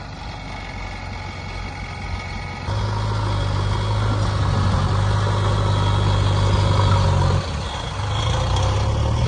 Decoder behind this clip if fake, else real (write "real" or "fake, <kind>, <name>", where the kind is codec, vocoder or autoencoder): real